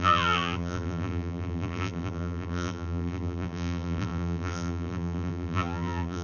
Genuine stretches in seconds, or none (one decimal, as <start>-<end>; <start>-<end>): none